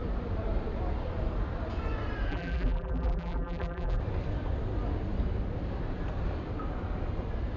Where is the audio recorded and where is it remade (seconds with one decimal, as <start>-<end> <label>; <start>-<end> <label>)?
0.0-2.3 recorded; 2.3-4.0 remade; 4.0-7.6 recorded